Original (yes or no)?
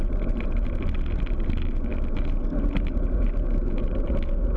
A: yes